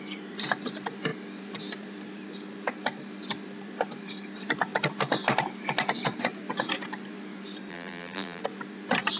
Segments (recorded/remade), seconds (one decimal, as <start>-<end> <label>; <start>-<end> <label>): 0.0-7.7 recorded; 7.7-8.4 remade; 8.4-9.2 recorded